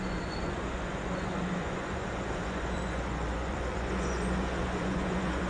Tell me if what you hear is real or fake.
fake